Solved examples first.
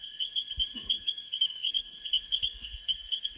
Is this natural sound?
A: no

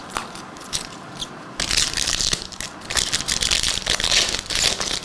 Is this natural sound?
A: yes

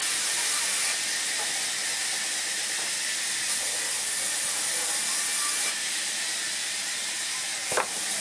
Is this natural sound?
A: yes